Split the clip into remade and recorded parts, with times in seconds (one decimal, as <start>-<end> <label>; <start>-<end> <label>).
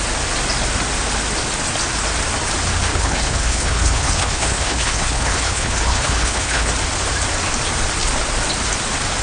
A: 0.0-2.9 recorded; 2.9-6.7 remade; 6.7-9.2 recorded